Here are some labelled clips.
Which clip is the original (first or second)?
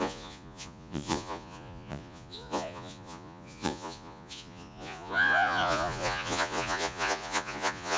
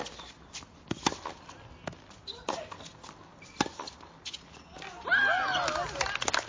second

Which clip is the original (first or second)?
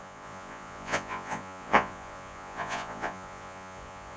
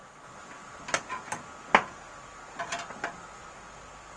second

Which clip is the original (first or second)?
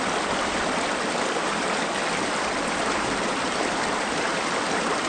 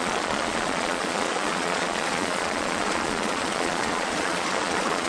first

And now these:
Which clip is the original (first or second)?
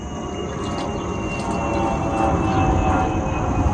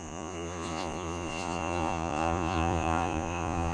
first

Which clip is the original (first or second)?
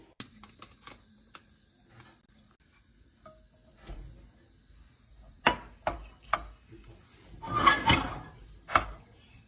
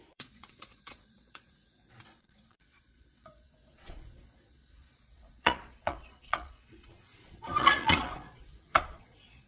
first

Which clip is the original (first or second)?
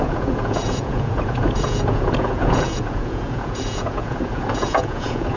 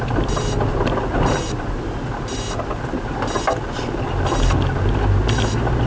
second